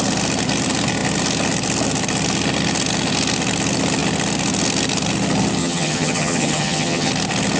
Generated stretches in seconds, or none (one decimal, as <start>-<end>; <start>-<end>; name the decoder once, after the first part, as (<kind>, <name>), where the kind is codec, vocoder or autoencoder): 5.6-7.1 (vocoder, HiFi-GAN)

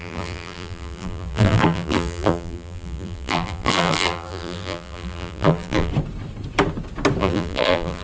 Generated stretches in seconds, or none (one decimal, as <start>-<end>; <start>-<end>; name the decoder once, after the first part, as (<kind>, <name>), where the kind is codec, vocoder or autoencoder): 0.0-5.9 (vocoder, BigVGAN v2); 7.2-8.0

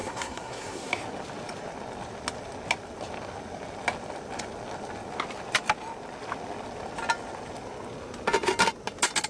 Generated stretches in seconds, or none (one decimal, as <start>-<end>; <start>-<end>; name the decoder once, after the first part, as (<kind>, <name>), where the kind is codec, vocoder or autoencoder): 0.0-0.9 (codec, SNAC)